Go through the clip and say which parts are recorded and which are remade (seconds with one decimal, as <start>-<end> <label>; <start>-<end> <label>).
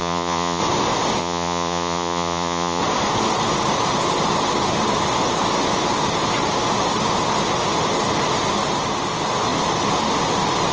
0.0-0.6 remade; 0.6-1.2 recorded; 1.2-2.8 remade; 2.8-10.7 recorded